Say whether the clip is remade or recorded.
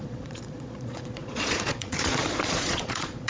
remade